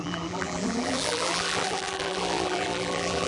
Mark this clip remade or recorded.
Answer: remade